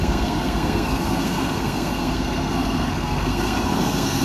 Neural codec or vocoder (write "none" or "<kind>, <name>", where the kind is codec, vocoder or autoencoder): codec, SNAC